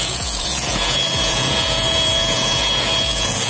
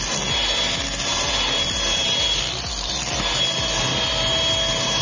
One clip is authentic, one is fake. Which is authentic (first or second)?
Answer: second